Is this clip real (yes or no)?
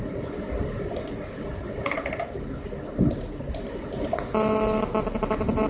yes